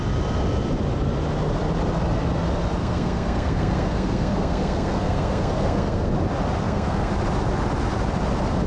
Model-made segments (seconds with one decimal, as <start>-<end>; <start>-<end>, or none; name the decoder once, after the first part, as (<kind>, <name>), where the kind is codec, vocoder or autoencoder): 2.8-6.1 (codec, SNAC); 6.6-7.1